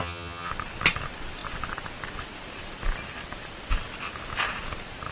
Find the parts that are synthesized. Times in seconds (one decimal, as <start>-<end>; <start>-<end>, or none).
0.0-0.5